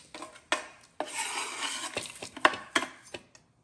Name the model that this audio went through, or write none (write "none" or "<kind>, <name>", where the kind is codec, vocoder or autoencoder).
none